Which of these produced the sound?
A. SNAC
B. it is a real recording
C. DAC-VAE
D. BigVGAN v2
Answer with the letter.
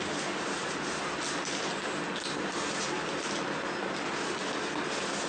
B